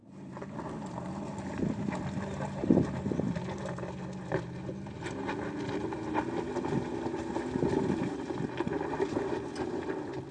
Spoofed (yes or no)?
no